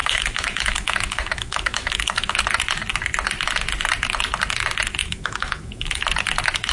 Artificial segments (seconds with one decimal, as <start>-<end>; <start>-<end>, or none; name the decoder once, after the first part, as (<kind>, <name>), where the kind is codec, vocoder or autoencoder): 0.0-2.4 (autoencoder, DAC-VAE); 5.0-6.0